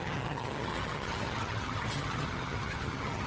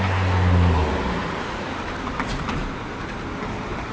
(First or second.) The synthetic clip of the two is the first